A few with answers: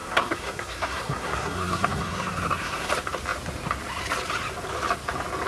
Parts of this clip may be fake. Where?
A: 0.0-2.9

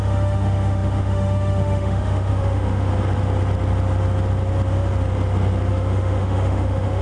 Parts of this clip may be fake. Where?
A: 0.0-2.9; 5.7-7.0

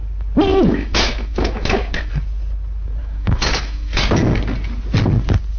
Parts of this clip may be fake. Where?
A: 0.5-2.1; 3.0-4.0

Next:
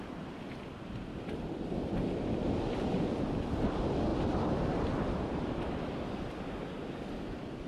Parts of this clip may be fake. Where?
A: 0.0-7.7

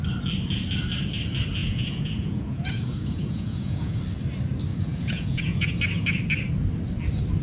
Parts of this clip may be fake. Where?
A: 1.6-4.0; 4.7-5.7